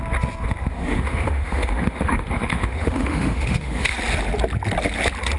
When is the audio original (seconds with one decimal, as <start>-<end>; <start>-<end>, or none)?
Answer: 0.0-0.7; 3.9-5.4